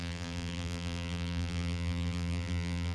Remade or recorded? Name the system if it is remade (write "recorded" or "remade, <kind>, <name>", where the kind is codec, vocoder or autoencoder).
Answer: remade, vocoder, BigVGAN v2